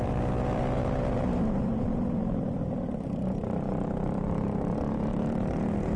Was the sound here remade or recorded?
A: remade